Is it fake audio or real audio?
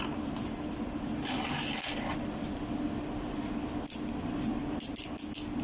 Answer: real